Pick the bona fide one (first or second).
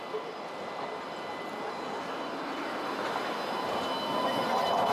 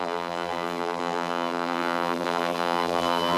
first